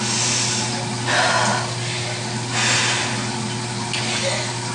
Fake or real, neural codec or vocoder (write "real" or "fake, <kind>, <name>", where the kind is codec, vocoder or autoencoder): real